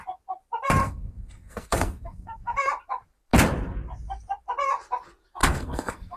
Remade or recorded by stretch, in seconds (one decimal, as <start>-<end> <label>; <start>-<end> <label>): 0.0-0.8 recorded; 0.8-2.4 remade; 2.4-5.4 recorded; 5.4-6.2 remade